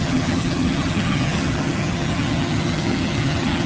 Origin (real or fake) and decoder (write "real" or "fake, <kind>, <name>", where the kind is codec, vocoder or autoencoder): fake, vocoder, HiFi-GAN